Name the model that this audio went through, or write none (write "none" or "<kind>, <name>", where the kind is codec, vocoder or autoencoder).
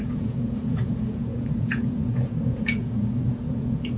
vocoder, Vocos